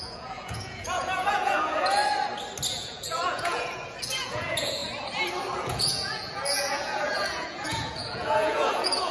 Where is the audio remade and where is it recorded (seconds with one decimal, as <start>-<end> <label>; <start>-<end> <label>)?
0.0-2.0 remade; 2.0-2.7 recorded; 2.7-4.8 remade; 4.8-5.6 recorded; 5.6-9.1 remade